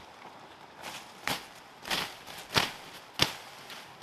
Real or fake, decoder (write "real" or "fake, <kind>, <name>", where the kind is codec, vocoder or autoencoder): real